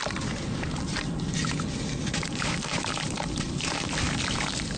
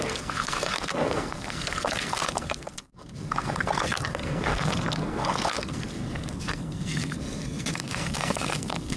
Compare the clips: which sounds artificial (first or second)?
second